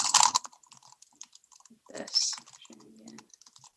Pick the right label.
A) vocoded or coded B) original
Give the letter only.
A